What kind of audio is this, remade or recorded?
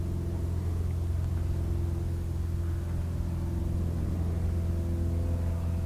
recorded